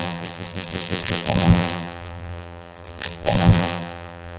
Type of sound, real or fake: fake